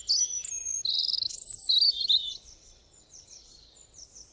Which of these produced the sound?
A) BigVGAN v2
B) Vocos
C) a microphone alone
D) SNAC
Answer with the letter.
C